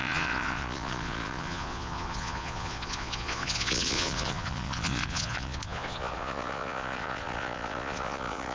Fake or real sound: fake